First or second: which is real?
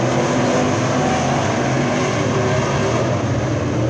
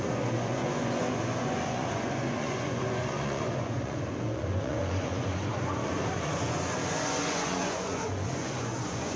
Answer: first